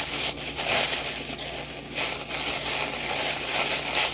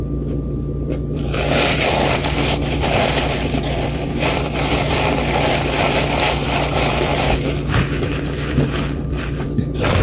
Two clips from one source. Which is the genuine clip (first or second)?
first